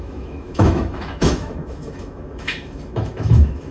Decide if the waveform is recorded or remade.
remade